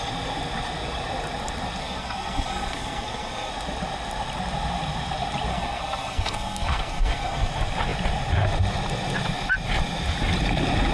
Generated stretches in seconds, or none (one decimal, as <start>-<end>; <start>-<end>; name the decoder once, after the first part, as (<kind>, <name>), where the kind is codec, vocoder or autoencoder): 1.8-3.5 (codec, SNAC); 5.5-7.5